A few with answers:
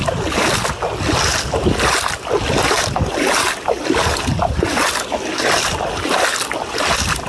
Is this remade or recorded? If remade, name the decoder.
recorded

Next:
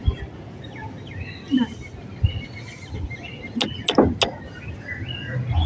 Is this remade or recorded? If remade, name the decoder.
recorded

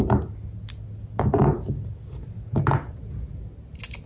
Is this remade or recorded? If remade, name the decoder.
recorded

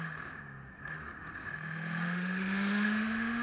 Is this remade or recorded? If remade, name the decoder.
remade, autoencoder, DAC-VAE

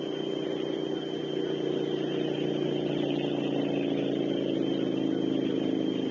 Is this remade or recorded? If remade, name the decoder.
recorded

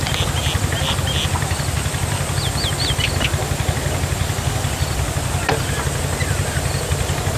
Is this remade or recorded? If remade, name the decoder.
recorded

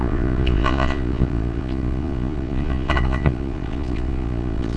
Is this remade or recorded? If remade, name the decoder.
remade, vocoder, Vocos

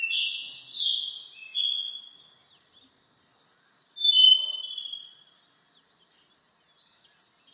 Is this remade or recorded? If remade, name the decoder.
recorded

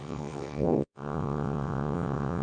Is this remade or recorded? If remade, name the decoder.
remade, vocoder, WaveNeXt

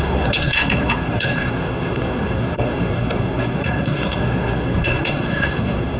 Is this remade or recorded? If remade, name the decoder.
remade, codec, SNAC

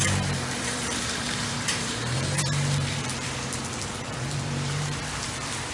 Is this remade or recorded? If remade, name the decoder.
remade, vocoder, BigVGAN v2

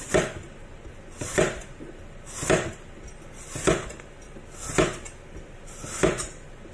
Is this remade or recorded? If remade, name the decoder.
recorded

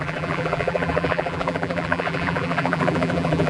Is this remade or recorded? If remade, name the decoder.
remade, vocoder, BigVGAN v2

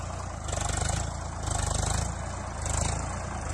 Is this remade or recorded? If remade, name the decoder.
recorded